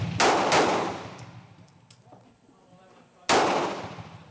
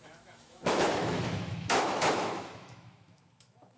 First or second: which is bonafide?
first